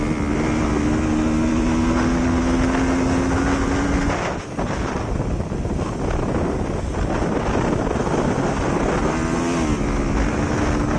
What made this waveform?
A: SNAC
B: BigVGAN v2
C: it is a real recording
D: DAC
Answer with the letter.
C